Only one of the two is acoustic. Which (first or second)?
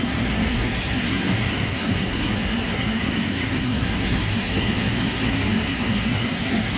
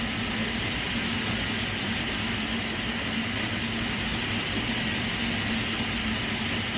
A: second